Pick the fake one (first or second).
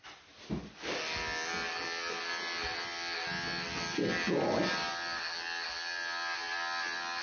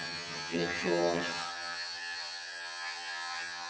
second